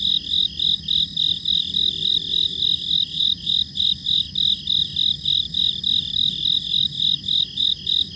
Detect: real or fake real